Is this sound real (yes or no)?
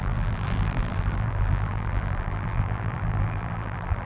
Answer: no